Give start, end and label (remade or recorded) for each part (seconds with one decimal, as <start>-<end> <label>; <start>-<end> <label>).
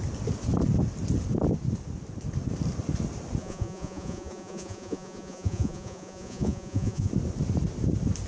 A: 0.0-3.4 recorded; 3.4-7.1 remade; 7.1-8.3 recorded